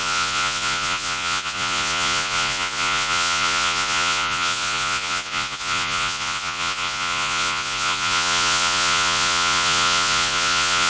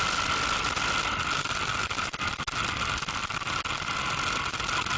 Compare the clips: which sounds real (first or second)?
second